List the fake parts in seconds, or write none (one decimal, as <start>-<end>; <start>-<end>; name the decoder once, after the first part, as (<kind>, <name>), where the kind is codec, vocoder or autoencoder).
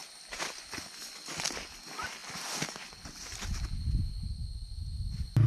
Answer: none